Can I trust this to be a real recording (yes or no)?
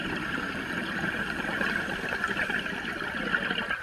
yes